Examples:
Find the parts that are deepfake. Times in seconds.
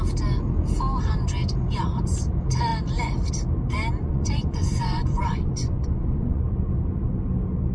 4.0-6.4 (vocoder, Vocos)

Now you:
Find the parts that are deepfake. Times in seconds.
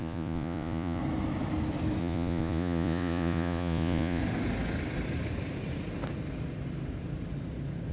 0.0-1.0 (vocoder, Vocos); 2.0-4.2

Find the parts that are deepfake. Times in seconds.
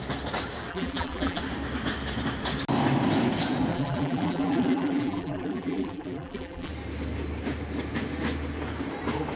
0.7-1.4 (vocoder, BigVGAN v2); 3.7-6.7